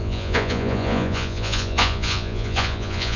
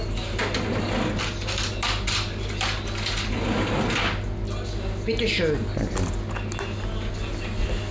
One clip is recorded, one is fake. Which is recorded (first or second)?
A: second